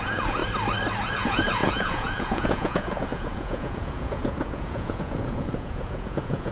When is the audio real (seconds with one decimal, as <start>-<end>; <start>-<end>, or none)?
0.4-1.1